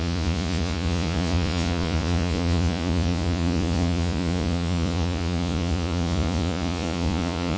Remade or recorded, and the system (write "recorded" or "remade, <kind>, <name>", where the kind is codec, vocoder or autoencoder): remade, vocoder, Vocos